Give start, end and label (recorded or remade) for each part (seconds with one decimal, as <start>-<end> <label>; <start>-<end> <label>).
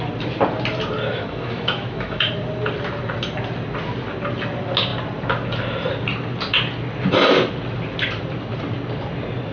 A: 0.0-1.1 recorded; 1.1-2.3 remade; 2.3-9.5 recorded